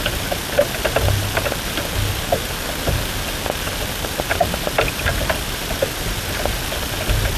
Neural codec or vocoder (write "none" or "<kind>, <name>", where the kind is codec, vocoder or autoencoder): none